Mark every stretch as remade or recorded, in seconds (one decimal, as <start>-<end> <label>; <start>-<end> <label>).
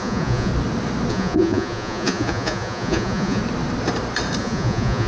0.0-0.5 remade; 0.5-1.1 recorded; 1.1-3.4 remade; 3.4-4.4 recorded; 4.4-5.1 remade